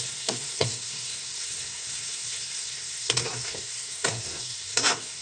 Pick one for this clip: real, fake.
fake